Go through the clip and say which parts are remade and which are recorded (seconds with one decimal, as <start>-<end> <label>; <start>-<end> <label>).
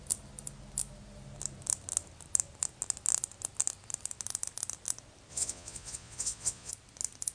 0.0-5.3 recorded; 5.3-6.7 remade; 6.7-7.3 recorded